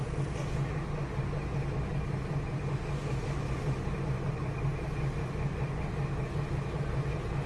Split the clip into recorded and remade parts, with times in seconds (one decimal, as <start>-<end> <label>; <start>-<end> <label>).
0.0-7.5 recorded